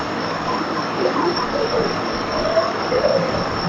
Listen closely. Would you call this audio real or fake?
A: fake